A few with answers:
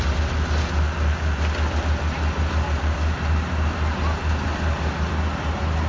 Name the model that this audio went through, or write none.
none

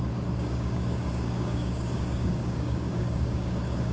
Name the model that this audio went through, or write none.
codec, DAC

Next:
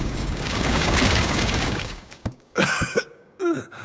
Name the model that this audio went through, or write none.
codec, DAC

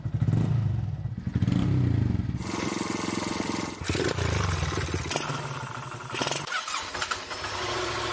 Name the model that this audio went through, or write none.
none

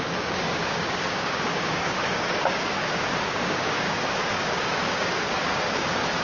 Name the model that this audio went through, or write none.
codec, DAC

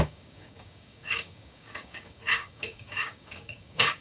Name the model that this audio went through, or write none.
codec, DAC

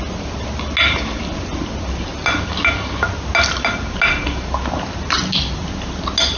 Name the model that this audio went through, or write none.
none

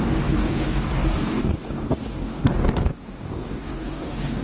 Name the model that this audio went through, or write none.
codec, DAC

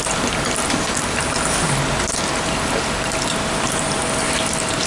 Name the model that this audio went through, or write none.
none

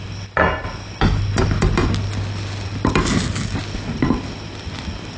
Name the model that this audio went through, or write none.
none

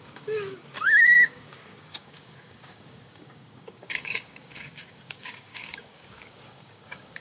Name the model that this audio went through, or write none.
codec, DAC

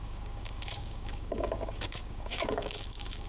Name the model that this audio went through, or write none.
codec, DAC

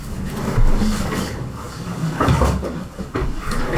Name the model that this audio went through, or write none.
codec, DAC